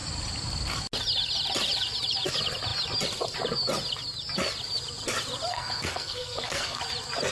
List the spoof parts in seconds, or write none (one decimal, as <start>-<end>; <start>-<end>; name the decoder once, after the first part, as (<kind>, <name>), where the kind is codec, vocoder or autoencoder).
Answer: 5.5-6.8 (codec, SNAC)